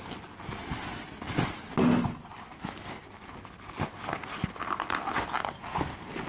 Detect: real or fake real